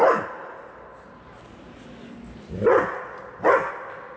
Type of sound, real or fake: real